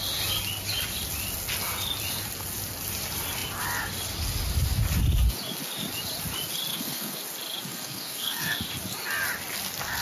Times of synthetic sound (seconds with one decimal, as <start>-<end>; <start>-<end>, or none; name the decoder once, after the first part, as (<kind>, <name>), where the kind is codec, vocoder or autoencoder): 6.7-7.2 (codec, SNAC); 7.7-8.6